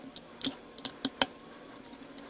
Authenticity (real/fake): real